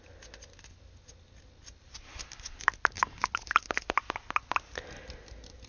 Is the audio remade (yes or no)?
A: no